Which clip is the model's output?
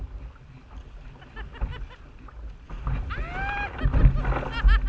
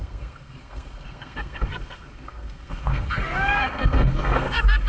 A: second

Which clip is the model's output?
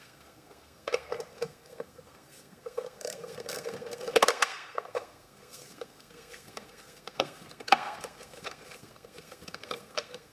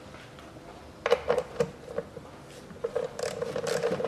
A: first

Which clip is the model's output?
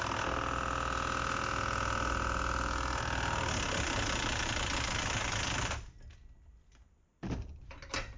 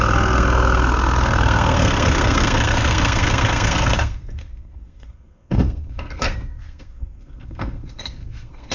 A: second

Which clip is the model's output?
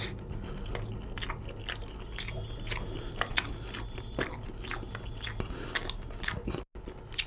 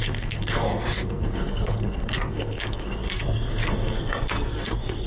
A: second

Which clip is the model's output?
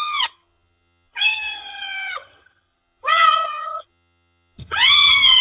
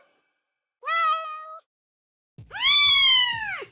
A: first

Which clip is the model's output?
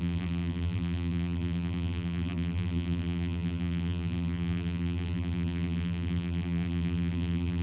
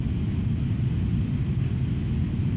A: first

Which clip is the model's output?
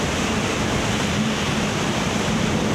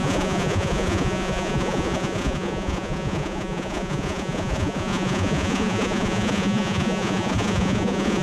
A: second